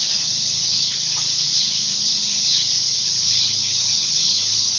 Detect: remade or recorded remade